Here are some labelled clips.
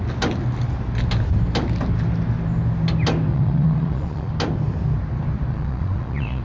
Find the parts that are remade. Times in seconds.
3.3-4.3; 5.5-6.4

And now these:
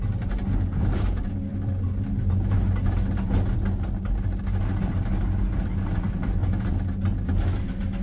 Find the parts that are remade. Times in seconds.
none

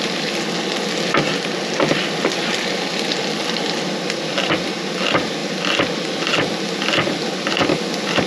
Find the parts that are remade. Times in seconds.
none

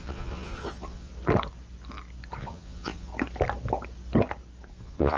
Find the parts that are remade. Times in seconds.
0.0-1.1; 2.4-3.1; 4.7-5.2